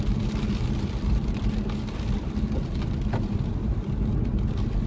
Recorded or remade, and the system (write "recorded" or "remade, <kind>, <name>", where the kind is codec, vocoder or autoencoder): recorded